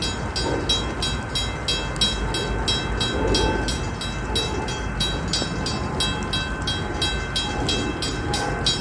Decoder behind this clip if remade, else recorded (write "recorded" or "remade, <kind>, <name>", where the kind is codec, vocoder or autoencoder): recorded